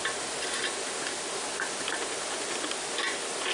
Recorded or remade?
recorded